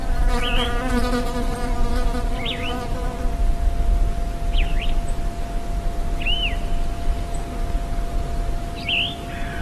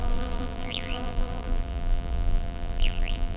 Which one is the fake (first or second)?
second